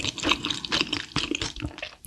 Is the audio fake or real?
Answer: real